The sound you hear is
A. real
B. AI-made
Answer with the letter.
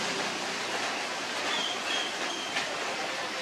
A